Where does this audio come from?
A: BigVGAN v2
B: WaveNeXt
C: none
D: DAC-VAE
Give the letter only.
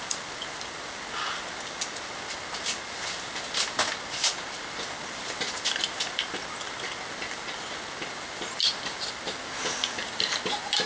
C